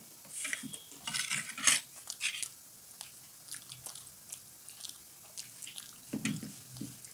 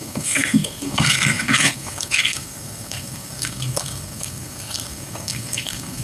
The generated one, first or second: second